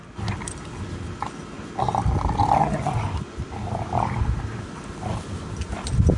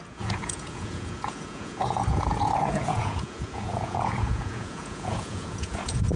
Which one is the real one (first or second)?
first